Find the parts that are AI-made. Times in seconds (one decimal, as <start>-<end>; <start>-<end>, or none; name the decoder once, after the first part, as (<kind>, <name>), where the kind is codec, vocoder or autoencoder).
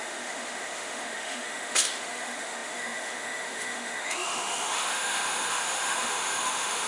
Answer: 0.0-6.9 (autoencoder, DAC-VAE)